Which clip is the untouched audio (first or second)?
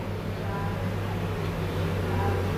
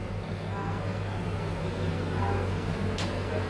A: first